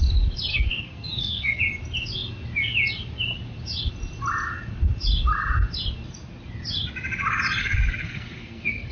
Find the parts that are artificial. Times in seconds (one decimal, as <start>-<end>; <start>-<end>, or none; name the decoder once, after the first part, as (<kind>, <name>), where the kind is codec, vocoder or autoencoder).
0.5-1.6 (codec, SNAC); 7.6-8.9